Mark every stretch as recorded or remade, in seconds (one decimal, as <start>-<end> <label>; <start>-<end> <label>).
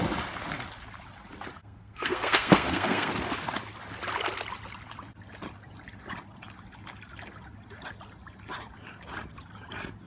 0.0-1.6 recorded; 1.6-3.1 remade; 3.1-10.1 recorded